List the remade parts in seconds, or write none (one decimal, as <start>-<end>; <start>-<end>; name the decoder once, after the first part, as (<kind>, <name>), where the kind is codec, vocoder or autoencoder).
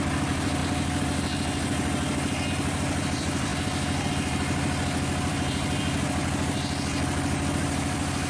0.0-0.6 (vocoder, BigVGAN v2); 2.5-6.2; 7.6-8.3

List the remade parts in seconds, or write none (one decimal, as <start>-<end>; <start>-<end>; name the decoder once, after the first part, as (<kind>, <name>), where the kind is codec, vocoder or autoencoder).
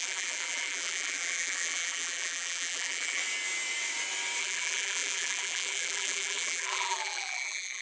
0.0-3.2 (vocoder, BigVGAN v2); 4.4-7.8